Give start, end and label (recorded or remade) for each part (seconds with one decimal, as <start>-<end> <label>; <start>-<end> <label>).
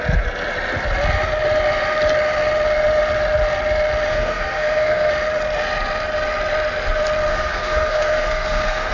0.0-4.1 recorded; 4.1-5.1 remade; 5.1-7.3 recorded; 7.3-8.9 remade